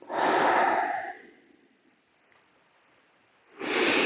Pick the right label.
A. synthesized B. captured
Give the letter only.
B